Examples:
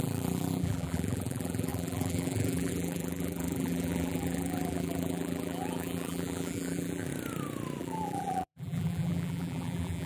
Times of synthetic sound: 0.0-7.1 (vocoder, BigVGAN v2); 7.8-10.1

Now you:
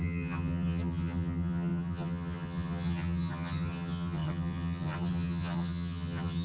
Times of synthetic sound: 0.0-6.4 (vocoder, HiFi-GAN)

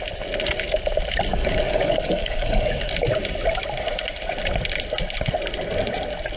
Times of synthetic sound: 1.3-2.9 (codec, DAC)